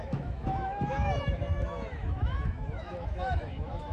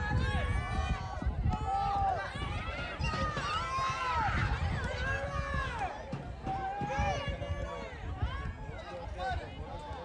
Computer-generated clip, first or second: first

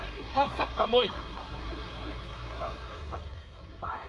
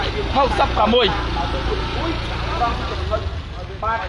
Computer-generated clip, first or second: first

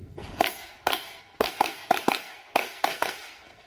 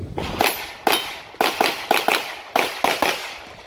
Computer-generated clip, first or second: first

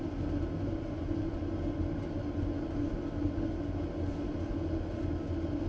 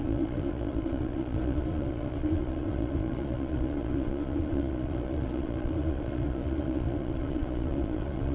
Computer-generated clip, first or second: second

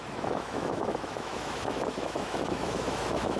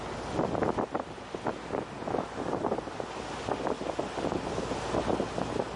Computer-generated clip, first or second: first